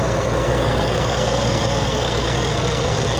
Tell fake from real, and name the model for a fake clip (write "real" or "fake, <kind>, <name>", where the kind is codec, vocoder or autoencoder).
fake, codec, SNAC